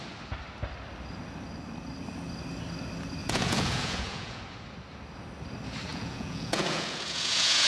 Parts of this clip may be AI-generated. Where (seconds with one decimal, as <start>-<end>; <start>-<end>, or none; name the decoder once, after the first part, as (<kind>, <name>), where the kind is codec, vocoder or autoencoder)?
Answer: 3.2-4.4 (vocoder, Vocos); 5.9-7.7

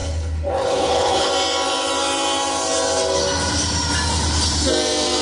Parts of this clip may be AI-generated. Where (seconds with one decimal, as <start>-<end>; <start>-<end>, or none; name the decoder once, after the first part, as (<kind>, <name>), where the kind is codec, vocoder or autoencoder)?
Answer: 0.0-1.3 (codec, HILCodec)

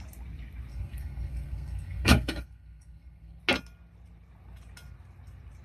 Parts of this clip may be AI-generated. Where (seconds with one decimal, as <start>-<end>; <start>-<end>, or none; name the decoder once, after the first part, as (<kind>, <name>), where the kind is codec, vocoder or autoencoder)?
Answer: 0.7-3.4 (codec, SNAC)

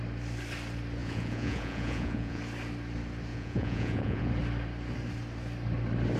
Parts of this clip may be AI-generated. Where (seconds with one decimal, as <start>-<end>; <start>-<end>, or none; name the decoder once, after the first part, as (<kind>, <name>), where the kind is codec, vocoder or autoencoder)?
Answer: 1.0-2.4 (vocoder, Vocos); 3.3-4.3

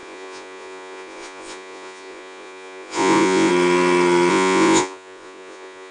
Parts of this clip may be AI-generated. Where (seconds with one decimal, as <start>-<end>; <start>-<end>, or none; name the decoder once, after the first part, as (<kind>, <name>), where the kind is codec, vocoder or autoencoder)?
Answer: 0.0-3.5 (vocoder, Vocos); 4.3-5.9

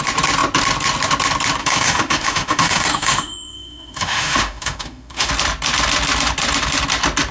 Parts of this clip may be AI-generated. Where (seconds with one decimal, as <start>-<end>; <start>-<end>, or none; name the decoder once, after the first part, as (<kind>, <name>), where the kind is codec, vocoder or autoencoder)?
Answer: 1.6-5.3 (autoencoder, DAC-VAE)

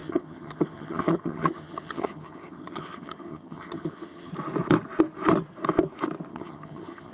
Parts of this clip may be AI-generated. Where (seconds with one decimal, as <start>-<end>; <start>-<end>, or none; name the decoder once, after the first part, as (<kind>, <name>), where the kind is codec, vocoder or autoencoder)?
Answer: 0.0-4.3 (vocoder, HiFi-GAN); 6.3-7.1